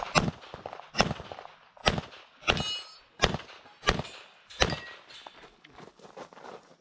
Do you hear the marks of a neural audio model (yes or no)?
no